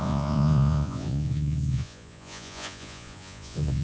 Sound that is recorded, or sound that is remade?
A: remade